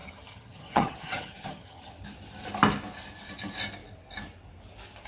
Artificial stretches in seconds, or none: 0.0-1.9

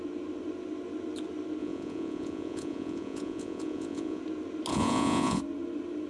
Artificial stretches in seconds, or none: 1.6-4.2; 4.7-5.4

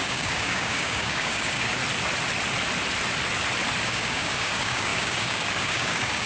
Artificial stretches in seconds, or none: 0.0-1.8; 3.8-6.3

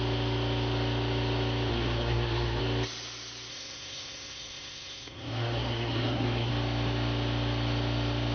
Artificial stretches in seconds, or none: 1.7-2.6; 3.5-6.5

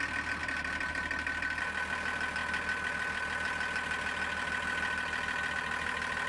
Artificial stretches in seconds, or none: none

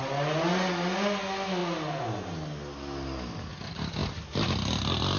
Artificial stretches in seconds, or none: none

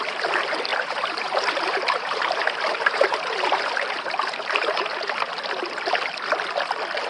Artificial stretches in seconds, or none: 0.7-5.0